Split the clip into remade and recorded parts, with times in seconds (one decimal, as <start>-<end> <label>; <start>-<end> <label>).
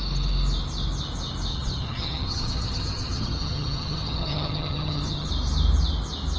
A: 0.0-1.5 recorded; 1.5-5.3 remade; 5.3-6.4 recorded